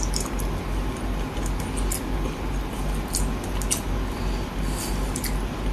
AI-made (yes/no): no